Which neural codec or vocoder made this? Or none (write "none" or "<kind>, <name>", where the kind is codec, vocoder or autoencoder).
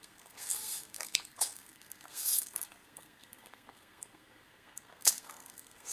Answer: codec, SNAC